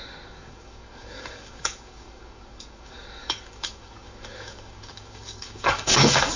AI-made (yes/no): yes